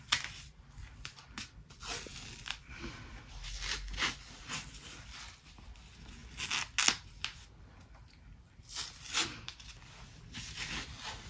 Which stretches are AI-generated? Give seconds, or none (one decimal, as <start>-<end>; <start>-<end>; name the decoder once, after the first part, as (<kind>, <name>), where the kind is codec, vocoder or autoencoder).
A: none